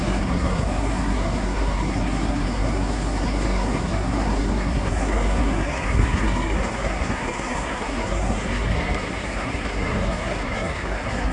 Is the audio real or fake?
fake